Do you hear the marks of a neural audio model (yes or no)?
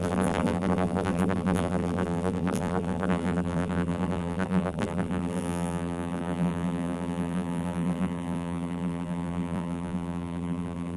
yes